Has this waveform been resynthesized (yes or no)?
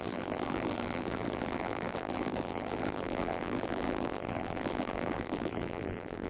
yes